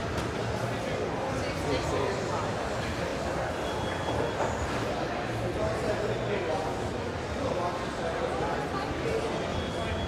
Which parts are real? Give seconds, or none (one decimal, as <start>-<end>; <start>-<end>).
0.0-10.1